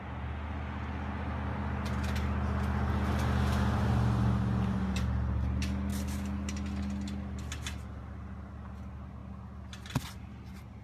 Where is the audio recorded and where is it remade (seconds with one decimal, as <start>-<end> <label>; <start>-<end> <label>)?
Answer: 0.0-10.8 recorded